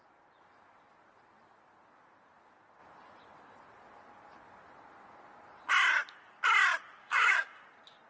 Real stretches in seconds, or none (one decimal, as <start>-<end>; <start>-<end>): 0.0-7.0; 7.6-8.1